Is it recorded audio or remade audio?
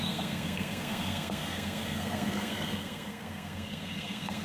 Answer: remade